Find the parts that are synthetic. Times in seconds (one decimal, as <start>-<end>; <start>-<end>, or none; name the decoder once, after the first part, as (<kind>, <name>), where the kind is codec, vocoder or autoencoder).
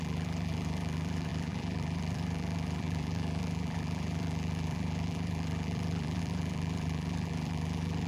0.0-8.1 (vocoder, BigVGAN v2)